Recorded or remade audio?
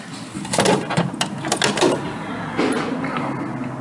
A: recorded